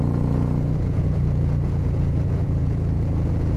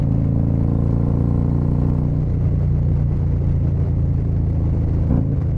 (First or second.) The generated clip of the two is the first